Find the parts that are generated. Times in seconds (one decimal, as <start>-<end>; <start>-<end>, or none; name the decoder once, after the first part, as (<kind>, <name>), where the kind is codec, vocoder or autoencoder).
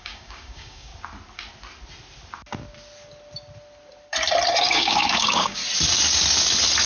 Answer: 0.0-0.9 (codec, DAC); 4.6-5.6